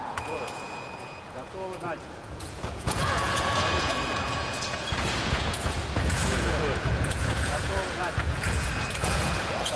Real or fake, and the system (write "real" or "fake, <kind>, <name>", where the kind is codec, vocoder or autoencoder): fake, vocoder, Vocos